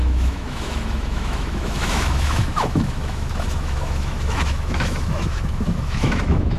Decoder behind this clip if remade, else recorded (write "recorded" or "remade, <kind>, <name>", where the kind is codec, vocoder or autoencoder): remade, autoencoder, DAC-VAE